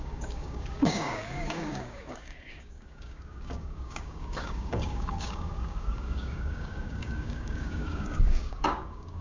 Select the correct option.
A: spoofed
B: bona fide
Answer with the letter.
A